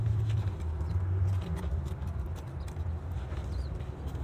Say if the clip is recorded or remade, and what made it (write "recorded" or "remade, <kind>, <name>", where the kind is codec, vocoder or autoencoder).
recorded